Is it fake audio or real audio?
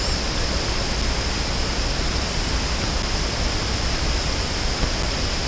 real